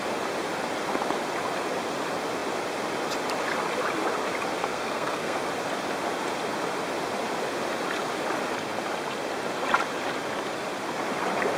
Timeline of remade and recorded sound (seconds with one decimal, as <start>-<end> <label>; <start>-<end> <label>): 0.0-4.6 recorded; 4.6-5.4 remade; 5.4-11.6 recorded